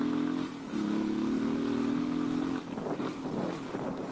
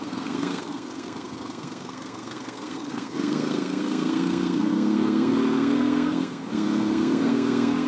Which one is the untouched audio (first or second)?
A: first